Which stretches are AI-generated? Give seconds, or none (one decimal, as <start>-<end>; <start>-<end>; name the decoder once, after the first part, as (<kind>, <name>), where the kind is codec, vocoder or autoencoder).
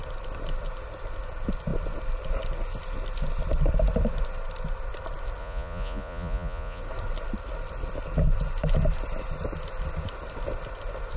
5.4-6.8 (vocoder, Vocos)